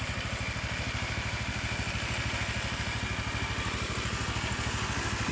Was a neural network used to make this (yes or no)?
no